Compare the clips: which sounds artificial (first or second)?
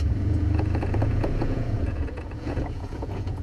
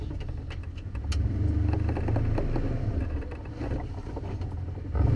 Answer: first